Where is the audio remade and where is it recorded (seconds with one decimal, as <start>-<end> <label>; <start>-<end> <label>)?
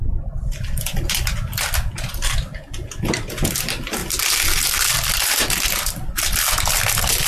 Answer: 0.0-7.3 recorded